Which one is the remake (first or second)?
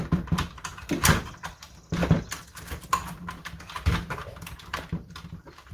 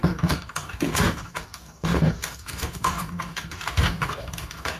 second